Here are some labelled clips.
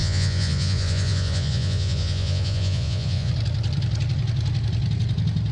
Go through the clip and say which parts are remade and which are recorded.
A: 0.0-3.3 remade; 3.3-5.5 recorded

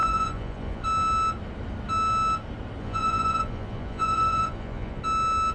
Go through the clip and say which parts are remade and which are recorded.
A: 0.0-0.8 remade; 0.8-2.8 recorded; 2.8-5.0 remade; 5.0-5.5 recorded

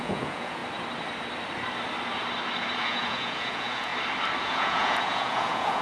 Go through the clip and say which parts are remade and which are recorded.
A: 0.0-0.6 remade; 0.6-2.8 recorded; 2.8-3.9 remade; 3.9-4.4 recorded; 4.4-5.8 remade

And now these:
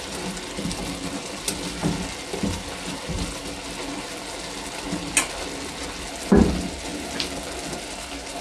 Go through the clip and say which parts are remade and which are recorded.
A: 0.0-8.4 recorded

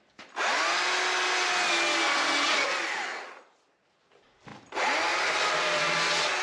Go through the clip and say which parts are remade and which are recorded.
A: 0.0-6.4 recorded